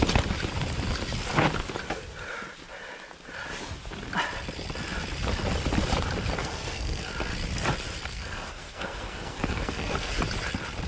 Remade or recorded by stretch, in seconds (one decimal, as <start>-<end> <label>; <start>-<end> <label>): 0.0-6.4 recorded; 6.4-7.1 remade; 7.1-8.1 recorded; 8.1-10.1 remade; 10.1-10.9 recorded